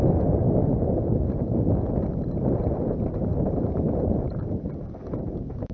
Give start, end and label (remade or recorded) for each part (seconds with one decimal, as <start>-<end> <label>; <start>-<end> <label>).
0.0-5.7 recorded